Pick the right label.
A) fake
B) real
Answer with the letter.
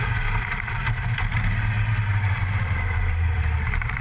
A